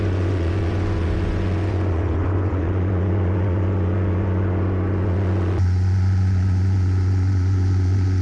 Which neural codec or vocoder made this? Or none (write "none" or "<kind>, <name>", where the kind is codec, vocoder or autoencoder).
vocoder, Vocos